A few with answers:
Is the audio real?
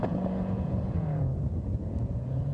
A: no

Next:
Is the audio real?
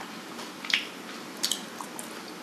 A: yes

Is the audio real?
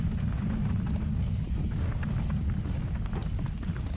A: yes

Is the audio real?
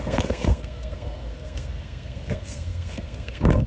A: no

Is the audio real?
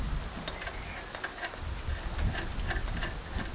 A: yes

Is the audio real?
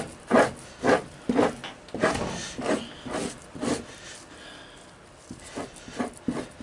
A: yes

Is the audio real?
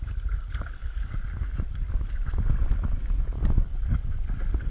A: yes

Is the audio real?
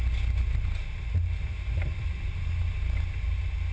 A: yes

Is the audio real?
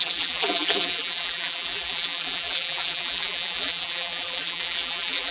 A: no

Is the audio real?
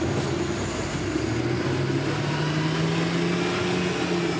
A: yes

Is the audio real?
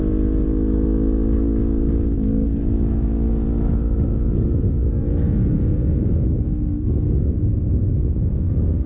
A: yes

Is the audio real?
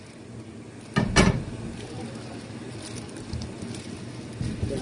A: yes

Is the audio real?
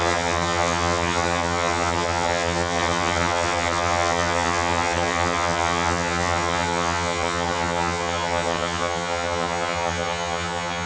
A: no